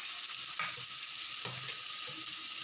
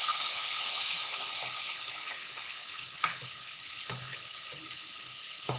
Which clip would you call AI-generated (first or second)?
second